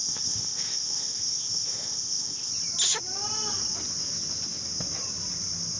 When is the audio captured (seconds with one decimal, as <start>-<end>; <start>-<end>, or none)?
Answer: 2.5-5.8